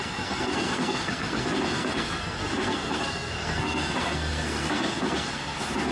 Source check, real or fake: fake